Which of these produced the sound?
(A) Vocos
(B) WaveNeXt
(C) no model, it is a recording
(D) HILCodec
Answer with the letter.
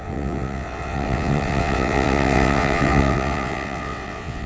B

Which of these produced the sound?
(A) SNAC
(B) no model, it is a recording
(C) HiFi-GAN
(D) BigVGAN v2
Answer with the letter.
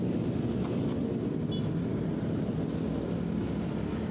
B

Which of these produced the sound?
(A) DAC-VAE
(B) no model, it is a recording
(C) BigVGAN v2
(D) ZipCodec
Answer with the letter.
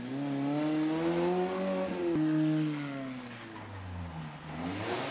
B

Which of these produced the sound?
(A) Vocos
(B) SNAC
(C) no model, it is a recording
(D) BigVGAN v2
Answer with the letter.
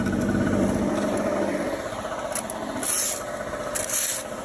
C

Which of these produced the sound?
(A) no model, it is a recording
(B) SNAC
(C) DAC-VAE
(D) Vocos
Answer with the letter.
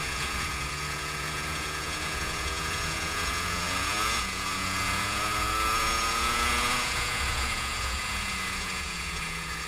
D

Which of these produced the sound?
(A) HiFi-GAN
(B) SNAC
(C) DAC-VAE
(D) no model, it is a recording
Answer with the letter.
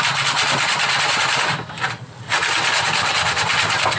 D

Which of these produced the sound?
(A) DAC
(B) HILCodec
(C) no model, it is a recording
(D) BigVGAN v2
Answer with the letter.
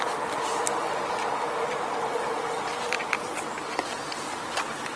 C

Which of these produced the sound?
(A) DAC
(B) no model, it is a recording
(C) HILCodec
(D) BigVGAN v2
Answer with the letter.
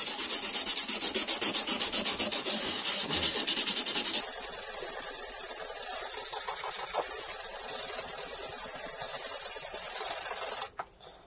B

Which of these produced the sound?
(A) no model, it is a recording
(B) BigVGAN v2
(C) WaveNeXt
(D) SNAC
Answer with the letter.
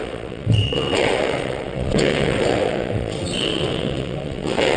C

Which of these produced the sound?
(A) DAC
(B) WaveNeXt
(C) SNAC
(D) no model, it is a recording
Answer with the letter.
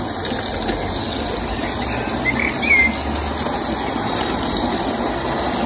D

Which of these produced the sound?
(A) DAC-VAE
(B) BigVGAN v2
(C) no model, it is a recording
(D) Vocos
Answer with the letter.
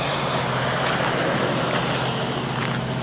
C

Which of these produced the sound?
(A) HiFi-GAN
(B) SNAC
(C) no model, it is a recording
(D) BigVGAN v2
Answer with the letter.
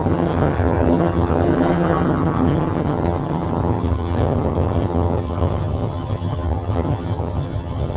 A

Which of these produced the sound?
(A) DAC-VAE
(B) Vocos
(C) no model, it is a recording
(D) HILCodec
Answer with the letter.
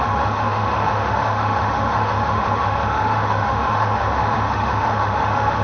A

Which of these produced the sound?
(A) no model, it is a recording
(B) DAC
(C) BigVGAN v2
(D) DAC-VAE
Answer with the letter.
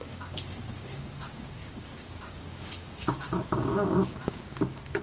B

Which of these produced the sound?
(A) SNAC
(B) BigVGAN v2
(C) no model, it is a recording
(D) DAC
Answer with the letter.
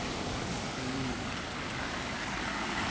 D